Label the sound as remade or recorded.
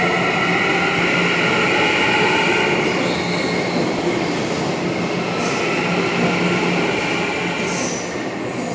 recorded